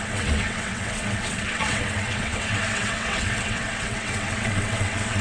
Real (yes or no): no